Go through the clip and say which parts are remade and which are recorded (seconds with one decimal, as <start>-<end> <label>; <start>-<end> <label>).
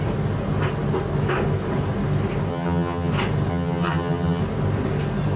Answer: 0.0-2.5 recorded; 2.5-3.1 remade; 3.1-3.5 recorded; 3.5-4.4 remade; 4.4-5.4 recorded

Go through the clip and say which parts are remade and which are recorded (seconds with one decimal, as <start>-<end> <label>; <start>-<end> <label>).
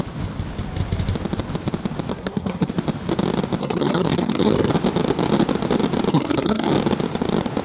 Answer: 0.0-2.1 recorded; 2.1-2.7 remade; 2.7-3.6 recorded; 3.6-4.7 remade; 4.7-6.1 recorded; 6.1-6.7 remade; 6.7-7.6 recorded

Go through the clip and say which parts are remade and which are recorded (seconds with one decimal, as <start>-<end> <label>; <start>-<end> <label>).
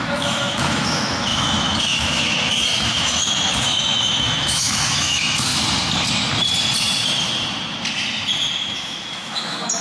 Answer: 0.0-5.5 remade; 5.5-8.6 recorded; 8.6-9.8 remade